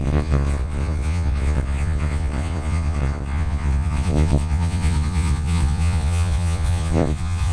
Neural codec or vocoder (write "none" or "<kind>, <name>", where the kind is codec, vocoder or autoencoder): vocoder, Vocos